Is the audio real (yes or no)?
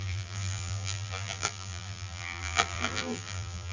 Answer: no